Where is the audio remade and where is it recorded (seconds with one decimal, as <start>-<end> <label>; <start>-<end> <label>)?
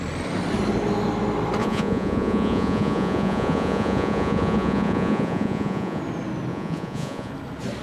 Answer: 0.0-1.6 recorded; 1.6-6.0 remade; 6.0-6.5 recorded; 6.5-7.3 remade; 7.3-7.8 recorded